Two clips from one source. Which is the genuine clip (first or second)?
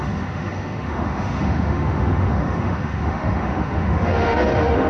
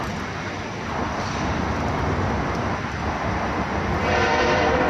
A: second